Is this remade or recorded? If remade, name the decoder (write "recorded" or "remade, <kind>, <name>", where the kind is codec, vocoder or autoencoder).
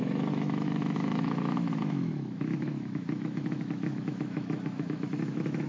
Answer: remade, autoencoder, DAC-VAE